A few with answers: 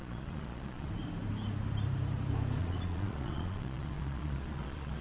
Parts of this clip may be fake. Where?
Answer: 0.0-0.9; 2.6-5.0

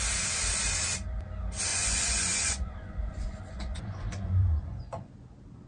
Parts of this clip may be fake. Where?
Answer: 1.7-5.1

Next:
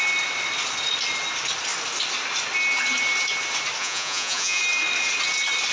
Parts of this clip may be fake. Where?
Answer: 3.8-4.6

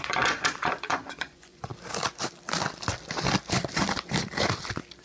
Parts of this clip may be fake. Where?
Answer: 0.0-1.7

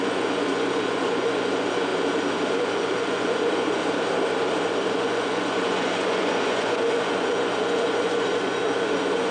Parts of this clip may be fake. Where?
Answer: 0.0-1.9; 2.5-3.8; 4.7-9.3

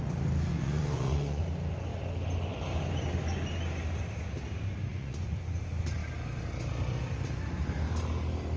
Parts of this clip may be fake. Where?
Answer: 0.5-1.4; 4.9-5.4